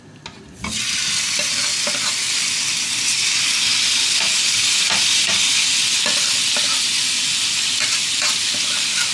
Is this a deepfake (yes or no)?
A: no